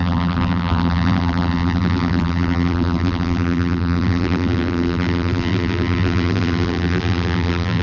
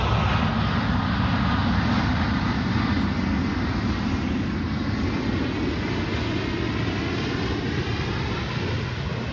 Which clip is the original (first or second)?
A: second